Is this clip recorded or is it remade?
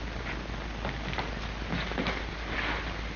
recorded